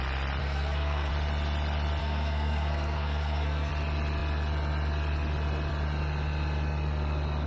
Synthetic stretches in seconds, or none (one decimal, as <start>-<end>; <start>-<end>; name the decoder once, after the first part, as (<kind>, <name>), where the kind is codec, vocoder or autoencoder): 0.4-1.1 (codec, SNAC); 2.0-3.7